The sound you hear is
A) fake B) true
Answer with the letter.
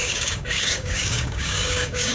A